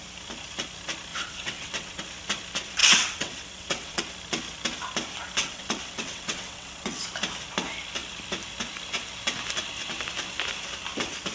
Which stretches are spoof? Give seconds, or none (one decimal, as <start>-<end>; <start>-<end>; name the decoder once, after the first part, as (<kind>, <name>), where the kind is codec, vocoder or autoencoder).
1.1-2.0 (vocoder, WaveNeXt); 2.8-4.0; 5.4-7.0